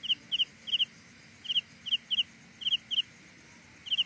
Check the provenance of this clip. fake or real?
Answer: real